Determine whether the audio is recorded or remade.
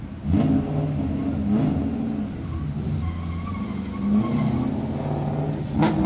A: recorded